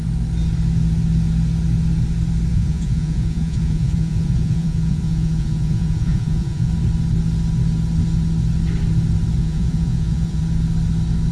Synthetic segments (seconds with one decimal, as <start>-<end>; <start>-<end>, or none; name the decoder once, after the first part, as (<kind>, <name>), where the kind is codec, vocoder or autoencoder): 2.5-6.7 (vocoder, Vocos); 9.4-10.4